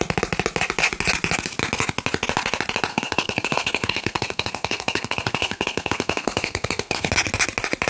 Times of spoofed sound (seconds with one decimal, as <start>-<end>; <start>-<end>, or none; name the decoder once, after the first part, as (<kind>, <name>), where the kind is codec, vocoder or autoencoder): 2.9-7.1 (codec, SNAC)